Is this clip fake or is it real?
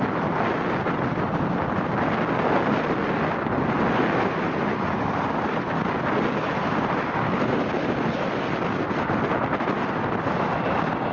real